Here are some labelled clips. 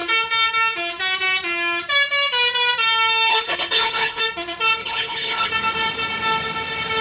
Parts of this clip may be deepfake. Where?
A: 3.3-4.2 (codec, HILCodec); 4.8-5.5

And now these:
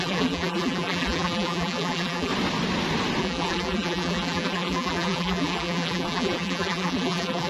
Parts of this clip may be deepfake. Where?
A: 0.0-2.3 (vocoder, BigVGAN v2); 3.2-7.5

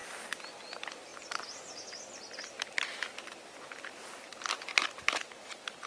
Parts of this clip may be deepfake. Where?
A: 1.1-4.6 (vocoder, BigVGAN v2)

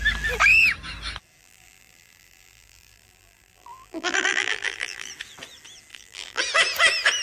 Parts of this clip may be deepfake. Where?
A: 1.4-5.1 (vocoder, BigVGAN v2); 5.9-6.4

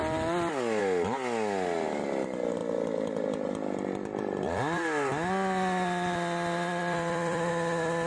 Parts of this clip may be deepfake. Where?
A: 2.6-7.5 (vocoder, BigVGAN v2)

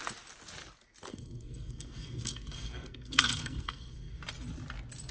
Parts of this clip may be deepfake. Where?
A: 1.1-4.2 (codec, SNAC)

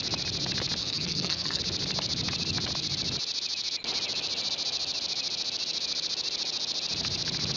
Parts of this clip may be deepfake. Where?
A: 0.8-1.6 (codec, SNAC)